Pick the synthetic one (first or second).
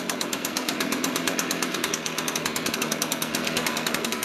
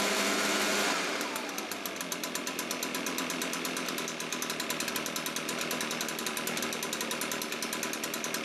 first